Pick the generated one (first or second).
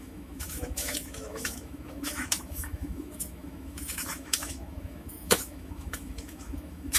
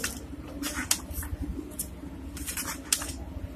first